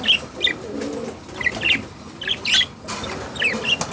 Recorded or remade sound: recorded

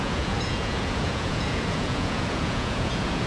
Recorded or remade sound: remade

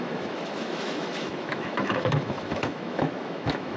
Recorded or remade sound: remade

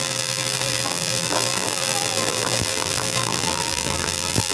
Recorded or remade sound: remade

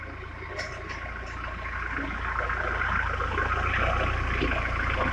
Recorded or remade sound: recorded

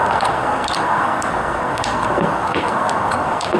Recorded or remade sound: remade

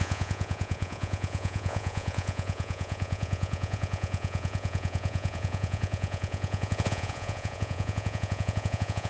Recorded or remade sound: remade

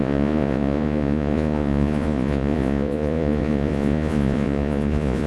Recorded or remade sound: remade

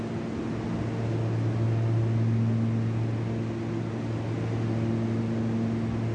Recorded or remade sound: recorded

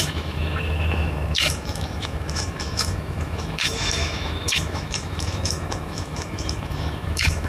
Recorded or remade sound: remade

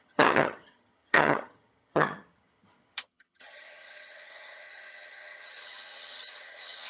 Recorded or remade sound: remade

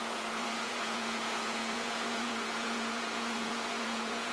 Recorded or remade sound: remade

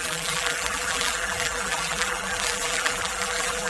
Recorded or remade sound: remade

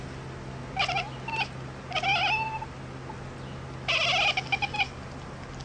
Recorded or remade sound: recorded